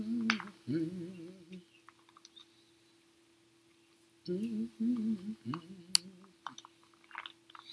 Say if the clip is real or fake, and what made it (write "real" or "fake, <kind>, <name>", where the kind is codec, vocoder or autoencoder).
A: real